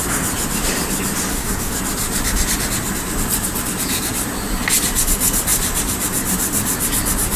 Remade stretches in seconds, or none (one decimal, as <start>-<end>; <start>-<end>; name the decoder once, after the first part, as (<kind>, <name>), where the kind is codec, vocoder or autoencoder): 1.3-1.8 (codec, DAC)